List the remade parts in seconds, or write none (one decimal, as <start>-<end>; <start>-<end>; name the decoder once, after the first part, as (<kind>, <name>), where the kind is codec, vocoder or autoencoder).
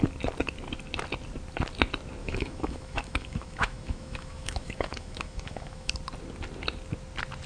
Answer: 2.2-5.9 (autoencoder, DAC-VAE)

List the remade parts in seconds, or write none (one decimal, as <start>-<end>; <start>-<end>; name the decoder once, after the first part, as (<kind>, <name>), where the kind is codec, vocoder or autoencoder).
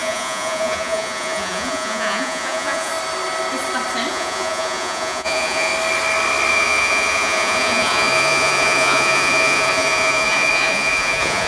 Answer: 0.0-2.9 (vocoder, Vocos); 4.1-5.7; 6.5-11.5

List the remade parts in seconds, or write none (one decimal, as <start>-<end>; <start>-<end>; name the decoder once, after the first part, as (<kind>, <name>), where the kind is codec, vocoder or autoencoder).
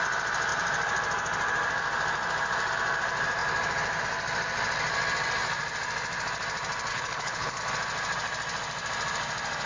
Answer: 6.9-7.6 (codec, HILCodec)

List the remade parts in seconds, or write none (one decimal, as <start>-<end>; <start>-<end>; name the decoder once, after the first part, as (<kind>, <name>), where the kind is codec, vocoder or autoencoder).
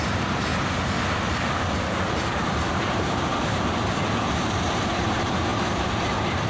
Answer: 0.0-0.5 (vocoder, BigVGAN v2); 2.2-3.3; 4.4-6.5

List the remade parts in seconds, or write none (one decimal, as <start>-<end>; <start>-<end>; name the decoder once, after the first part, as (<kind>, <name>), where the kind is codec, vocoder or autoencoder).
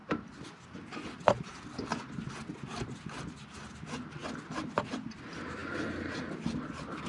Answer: none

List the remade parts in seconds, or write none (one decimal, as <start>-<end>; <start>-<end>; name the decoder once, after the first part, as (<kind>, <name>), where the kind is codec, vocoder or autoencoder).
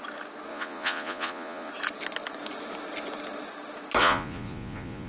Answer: 0.5-1.7 (vocoder, Vocos); 4.0-5.1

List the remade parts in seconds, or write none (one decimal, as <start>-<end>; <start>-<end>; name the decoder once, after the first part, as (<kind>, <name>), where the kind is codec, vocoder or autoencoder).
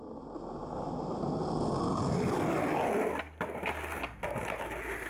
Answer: none